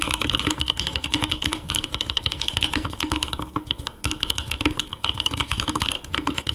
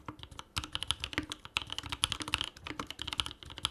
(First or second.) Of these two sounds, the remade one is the first